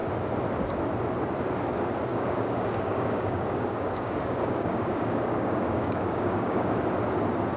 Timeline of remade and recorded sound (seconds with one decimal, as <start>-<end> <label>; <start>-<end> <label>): 0.0-2.1 recorded; 2.1-6.7 remade; 6.7-7.6 recorded